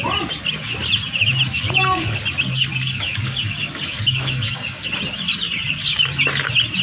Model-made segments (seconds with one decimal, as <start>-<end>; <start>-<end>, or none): 1.5-2.2; 2.7-4.9

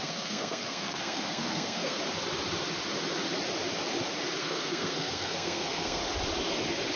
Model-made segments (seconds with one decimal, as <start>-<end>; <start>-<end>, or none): 0.0-2.0; 4.4-6.0